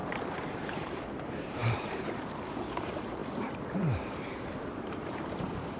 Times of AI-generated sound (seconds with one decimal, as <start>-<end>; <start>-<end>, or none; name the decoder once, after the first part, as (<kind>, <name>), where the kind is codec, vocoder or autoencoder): 0.7-5.8 (vocoder, BigVGAN v2)